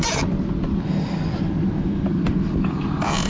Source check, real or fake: real